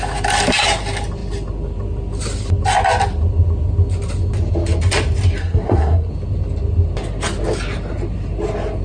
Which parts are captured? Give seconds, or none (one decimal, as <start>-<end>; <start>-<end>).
0.0-5.4; 6.1-8.8